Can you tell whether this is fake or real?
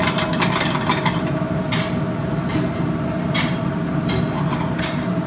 real